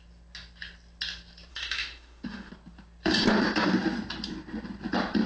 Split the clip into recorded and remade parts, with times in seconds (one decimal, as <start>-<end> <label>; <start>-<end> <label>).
0.0-1.5 recorded; 1.5-2.5 remade; 2.5-5.3 recorded